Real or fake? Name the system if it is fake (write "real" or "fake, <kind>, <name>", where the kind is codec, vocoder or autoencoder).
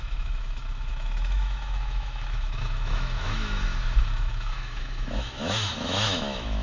fake, autoencoder, DAC-VAE